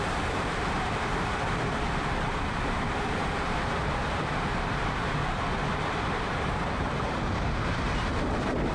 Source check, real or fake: fake